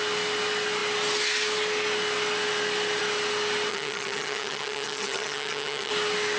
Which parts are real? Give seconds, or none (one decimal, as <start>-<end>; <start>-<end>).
0.0-3.7; 5.9-6.4